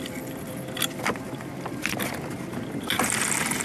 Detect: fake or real real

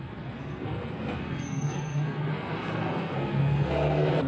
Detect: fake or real fake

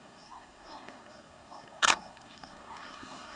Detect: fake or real fake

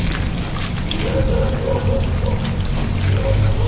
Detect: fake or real real